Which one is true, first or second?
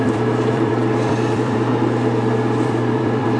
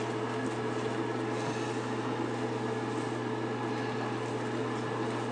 second